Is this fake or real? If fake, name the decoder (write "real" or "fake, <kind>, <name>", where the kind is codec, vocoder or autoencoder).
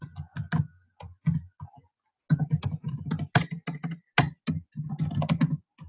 real